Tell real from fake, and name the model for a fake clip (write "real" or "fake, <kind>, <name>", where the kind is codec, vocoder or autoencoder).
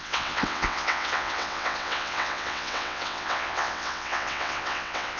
fake, vocoder, WaveNeXt